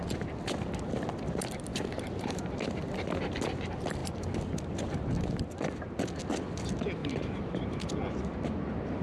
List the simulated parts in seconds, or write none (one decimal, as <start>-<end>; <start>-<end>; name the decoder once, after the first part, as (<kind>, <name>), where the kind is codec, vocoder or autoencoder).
1.7-2.4 (vocoder, BigVGAN v2); 7.0-7.8